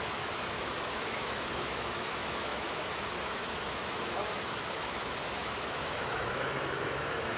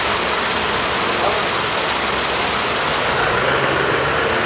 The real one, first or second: second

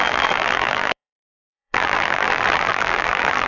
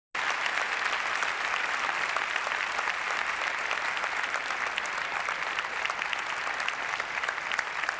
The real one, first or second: second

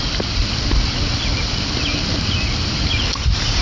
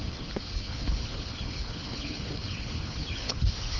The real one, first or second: first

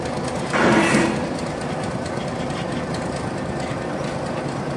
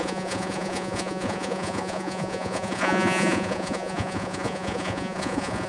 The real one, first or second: first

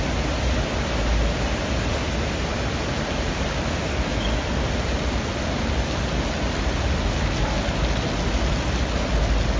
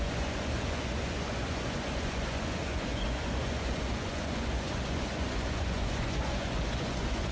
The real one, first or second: first